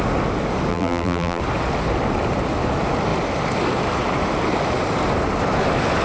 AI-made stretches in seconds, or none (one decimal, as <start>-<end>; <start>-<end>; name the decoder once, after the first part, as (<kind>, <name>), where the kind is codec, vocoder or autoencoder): 0.7-1.4 (vocoder, BigVGAN v2)